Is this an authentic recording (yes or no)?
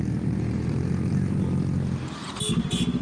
yes